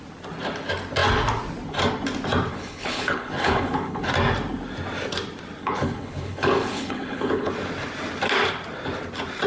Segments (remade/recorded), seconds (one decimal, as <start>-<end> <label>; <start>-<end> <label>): 0.0-2.5 recorded; 2.5-4.1 remade; 4.1-5.6 recorded; 5.6-7.5 remade; 7.5-9.5 recorded